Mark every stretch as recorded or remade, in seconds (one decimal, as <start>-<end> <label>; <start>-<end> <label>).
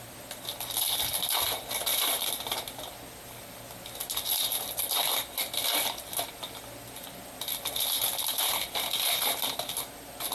0.0-1.9 recorded; 1.9-2.5 remade; 2.5-10.3 recorded